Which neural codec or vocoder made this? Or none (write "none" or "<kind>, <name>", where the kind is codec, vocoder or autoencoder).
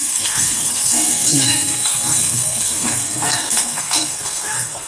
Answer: codec, SNAC